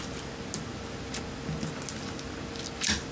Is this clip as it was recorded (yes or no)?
yes